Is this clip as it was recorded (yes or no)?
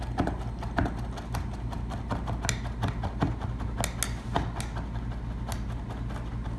yes